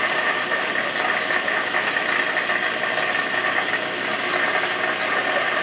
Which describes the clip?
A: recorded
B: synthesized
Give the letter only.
A